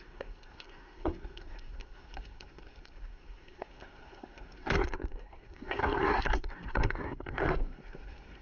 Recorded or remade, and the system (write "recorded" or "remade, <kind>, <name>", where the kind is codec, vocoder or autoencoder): remade, codec, SNAC